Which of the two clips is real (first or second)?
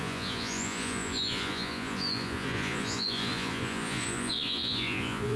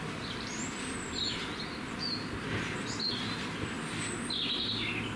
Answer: second